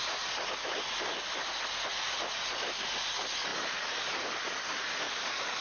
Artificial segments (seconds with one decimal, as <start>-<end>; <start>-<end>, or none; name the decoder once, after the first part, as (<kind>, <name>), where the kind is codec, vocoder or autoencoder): 1.9-2.5 (vocoder, Vocos)